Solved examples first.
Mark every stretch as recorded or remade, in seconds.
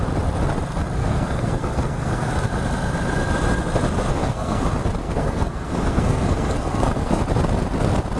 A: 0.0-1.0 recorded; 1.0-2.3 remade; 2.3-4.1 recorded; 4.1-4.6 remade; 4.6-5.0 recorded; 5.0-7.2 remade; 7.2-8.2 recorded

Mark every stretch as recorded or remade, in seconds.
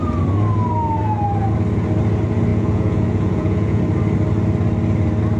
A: 0.0-2.5 recorded; 2.5-3.8 remade; 3.8-5.4 recorded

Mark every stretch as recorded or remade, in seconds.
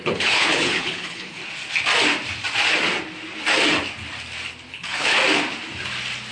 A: 0.0-1.4 remade; 1.4-4.7 recorded; 4.7-5.2 remade; 5.2-6.3 recorded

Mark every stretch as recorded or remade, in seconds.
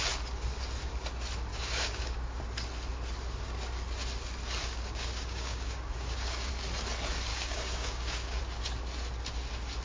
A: 0.0-1.5 recorded; 1.5-2.4 remade; 2.4-4.6 recorded; 4.6-6.5 remade; 6.5-7.3 recorded; 7.3-8.4 remade; 8.4-9.8 recorded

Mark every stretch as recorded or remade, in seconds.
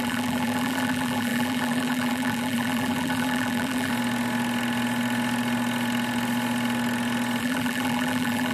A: 0.0-3.9 remade; 3.9-7.4 recorded; 7.4-8.5 remade